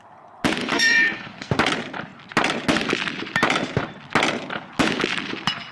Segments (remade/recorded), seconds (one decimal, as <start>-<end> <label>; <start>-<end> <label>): 0.0-0.6 recorded; 0.6-1.5 remade; 1.5-5.7 recorded